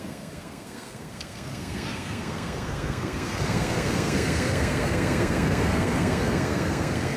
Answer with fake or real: fake